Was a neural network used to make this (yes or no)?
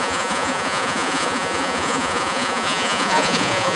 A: yes